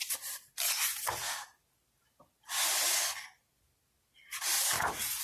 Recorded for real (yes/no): yes